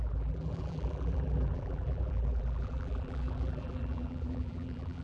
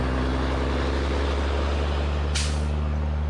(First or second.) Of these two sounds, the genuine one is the second